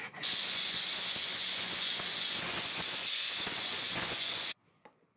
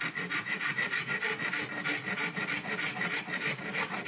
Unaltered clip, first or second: second